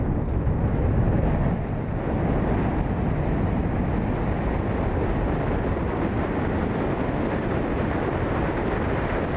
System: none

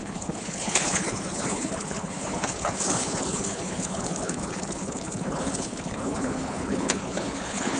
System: codec, HILCodec